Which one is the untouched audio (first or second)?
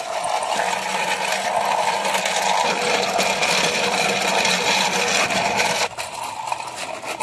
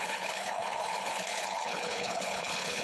first